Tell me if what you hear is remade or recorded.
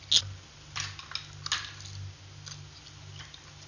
recorded